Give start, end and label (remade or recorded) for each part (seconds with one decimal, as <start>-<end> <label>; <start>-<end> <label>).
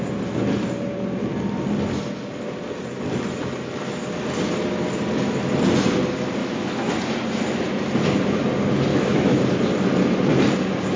0.0-6.4 recorded; 6.4-7.0 remade; 7.0-8.9 recorded; 8.9-9.4 remade; 9.4-11.0 recorded